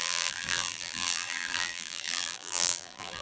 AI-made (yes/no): yes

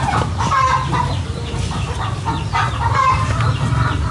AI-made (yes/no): no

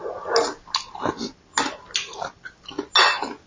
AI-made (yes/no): no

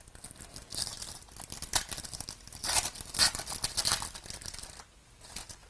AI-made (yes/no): no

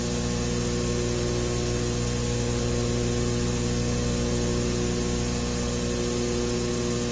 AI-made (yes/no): no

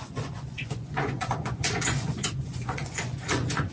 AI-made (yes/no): yes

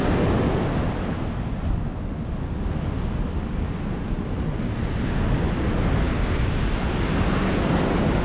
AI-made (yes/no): no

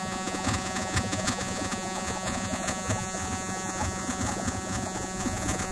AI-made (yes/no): yes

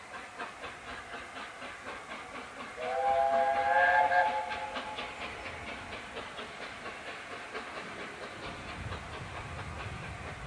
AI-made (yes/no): no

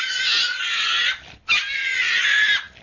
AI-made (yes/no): no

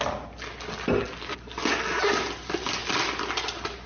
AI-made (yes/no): no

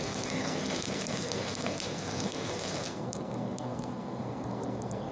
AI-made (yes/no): yes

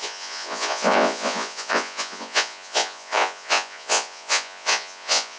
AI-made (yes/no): yes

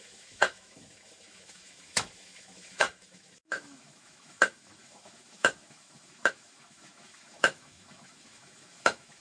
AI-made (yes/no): yes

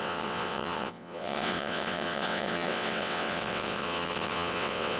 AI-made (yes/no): yes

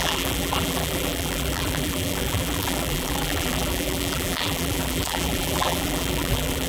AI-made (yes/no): yes